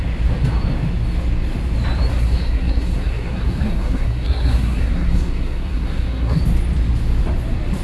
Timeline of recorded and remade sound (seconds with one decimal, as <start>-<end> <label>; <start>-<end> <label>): 0.0-2.1 recorded; 2.1-6.4 remade; 6.4-7.8 recorded